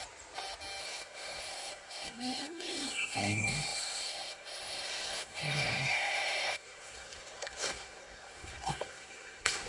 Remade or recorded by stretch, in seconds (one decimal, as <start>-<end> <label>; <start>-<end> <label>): 0.0-0.8 recorded; 0.8-9.7 remade